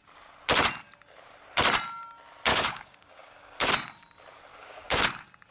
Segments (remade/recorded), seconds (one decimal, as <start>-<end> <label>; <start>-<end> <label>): 0.0-2.5 recorded; 2.5-3.7 remade; 3.7-4.5 recorded; 4.5-5.0 remade; 5.0-5.5 recorded